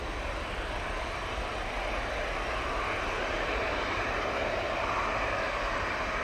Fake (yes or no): no